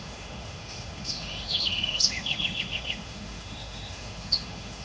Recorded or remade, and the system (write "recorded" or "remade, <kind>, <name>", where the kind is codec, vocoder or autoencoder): remade, autoencoder, DAC-VAE